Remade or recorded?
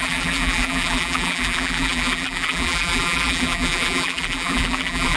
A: remade